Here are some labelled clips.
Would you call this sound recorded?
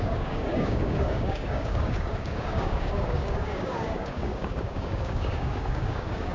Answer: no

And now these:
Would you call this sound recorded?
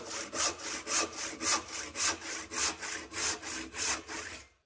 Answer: yes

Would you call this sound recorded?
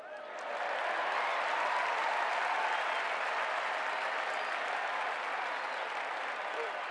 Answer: yes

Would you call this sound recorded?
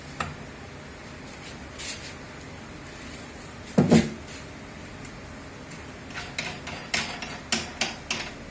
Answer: yes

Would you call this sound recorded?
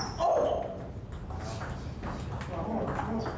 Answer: yes